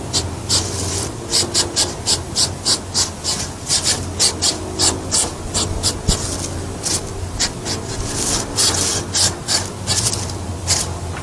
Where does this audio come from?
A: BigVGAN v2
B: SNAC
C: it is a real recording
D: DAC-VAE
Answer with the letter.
C